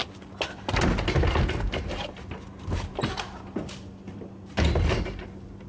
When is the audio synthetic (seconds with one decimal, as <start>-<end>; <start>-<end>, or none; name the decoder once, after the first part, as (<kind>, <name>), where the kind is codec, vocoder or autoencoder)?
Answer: none